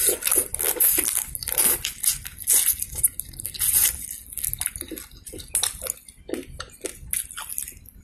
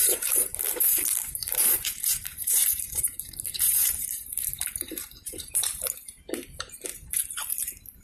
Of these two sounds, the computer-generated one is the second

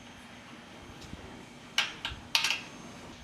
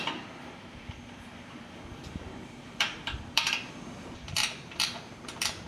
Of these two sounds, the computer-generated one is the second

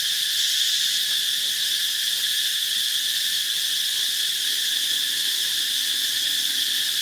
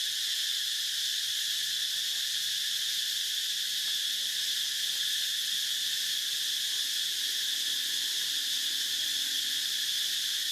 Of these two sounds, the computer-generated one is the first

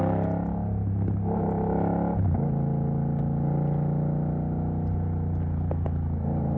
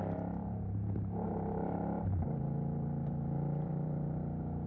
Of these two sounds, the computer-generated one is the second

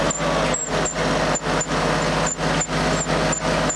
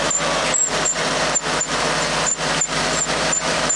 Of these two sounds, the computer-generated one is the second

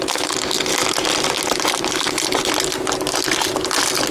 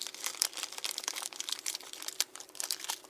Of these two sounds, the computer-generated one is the second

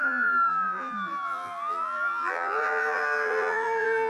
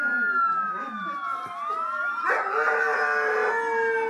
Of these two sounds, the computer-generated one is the first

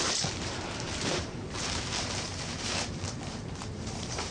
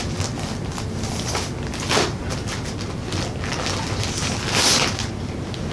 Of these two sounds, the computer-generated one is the first